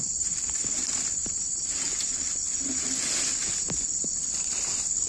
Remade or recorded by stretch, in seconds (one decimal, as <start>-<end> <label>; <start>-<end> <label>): 0.0-5.1 recorded